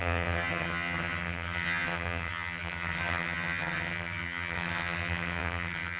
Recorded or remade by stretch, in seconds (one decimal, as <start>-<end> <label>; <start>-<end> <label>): 0.0-6.0 remade